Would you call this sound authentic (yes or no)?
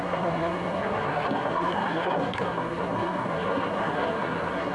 no